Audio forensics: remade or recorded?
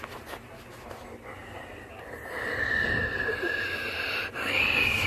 remade